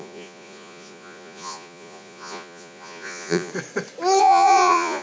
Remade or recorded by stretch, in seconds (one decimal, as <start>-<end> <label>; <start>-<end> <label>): 0.0-3.5 remade; 3.5-4.2 recorded; 4.2-5.0 remade